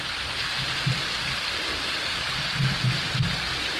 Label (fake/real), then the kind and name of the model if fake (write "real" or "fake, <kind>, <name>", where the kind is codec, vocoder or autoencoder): real